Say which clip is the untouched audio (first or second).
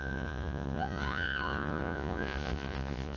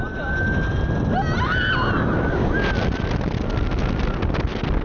second